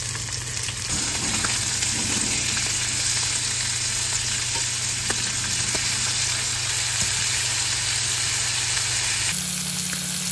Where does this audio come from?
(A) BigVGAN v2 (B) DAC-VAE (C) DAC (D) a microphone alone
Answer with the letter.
D